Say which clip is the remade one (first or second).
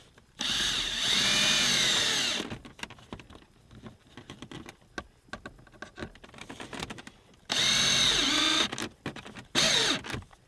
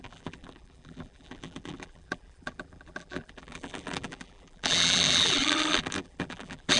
second